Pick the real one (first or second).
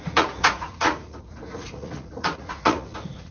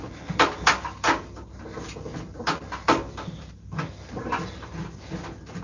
second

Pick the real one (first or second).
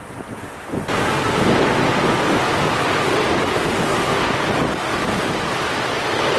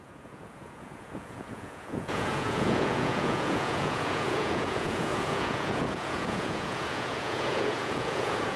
first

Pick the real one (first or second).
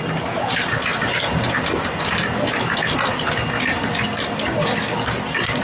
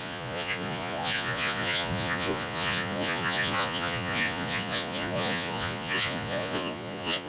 first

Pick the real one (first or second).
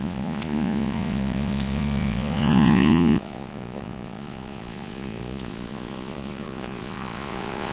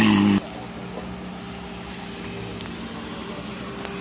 second